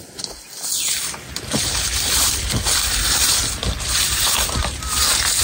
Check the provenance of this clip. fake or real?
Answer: real